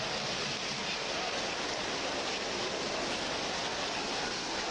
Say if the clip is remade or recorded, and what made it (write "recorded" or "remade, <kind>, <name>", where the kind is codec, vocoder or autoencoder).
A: recorded